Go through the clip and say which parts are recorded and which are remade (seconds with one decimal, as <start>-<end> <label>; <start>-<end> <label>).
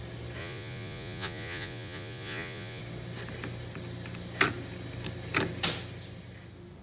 0.0-0.4 recorded; 0.4-2.8 remade; 2.8-6.8 recorded